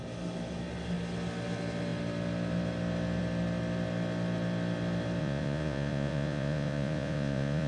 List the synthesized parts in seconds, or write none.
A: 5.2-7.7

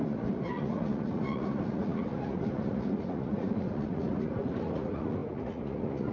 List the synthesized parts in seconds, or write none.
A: 0.0-6.1

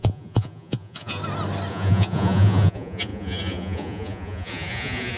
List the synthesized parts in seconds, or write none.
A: 0.0-1.2; 1.7-5.2

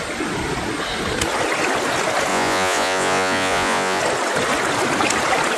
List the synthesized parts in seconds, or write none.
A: 2.3-4.0

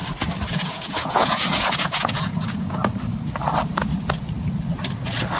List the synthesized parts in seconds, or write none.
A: 0.5-2.8

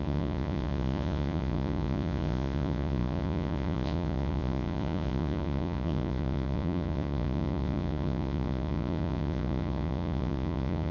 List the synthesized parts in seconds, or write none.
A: 0.0-10.9

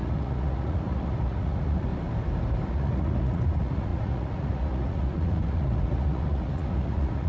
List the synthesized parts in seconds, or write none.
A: 0.0-1.9; 2.7-7.3